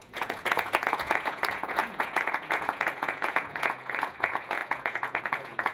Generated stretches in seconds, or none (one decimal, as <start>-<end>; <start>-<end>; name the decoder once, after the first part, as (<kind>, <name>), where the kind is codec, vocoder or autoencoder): 0.0-5.7 (vocoder, Vocos)